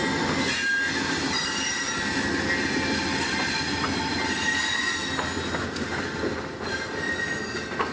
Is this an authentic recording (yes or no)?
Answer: yes